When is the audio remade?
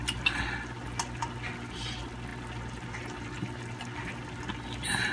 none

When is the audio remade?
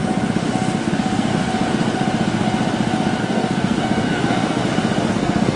0.9-1.3 (codec, SNAC); 3.2-4.6; 5.1-5.6